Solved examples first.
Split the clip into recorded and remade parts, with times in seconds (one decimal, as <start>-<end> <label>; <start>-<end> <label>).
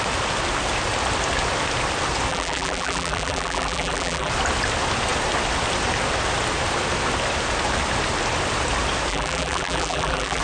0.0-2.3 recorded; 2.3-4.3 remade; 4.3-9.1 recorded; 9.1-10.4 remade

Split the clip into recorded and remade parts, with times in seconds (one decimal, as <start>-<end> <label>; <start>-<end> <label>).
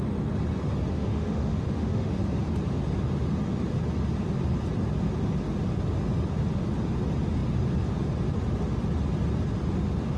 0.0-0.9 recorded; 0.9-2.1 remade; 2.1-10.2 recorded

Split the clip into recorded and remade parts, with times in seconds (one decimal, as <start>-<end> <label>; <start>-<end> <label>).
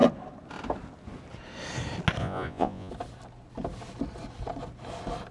0.0-2.2 recorded; 2.2-2.9 remade; 2.9-5.3 recorded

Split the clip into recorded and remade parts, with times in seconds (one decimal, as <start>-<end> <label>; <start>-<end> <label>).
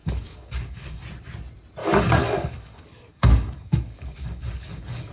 0.0-1.0 remade; 1.0-1.8 recorded; 1.8-5.1 remade